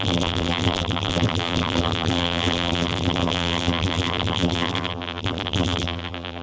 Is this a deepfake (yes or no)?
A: yes